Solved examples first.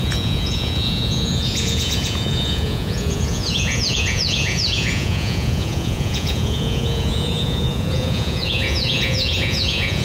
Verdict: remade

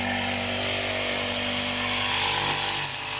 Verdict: recorded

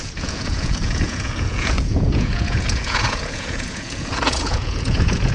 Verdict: remade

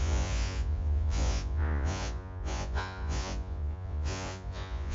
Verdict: remade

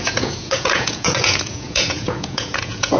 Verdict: remade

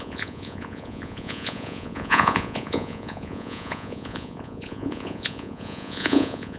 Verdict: remade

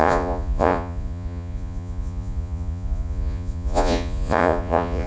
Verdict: remade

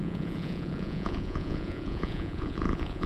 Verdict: remade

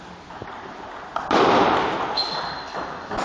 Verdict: recorded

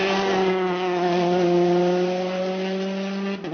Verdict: recorded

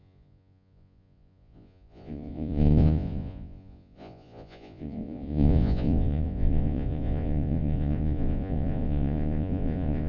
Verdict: remade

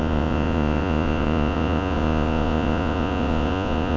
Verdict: remade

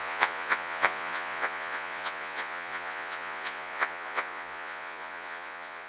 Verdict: remade